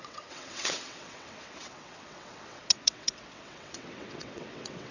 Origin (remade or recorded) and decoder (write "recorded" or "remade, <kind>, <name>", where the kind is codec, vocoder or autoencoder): remade, vocoder, WaveNeXt